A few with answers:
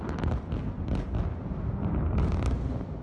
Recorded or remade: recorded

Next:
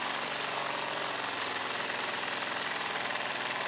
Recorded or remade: remade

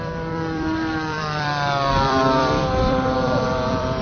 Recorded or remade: remade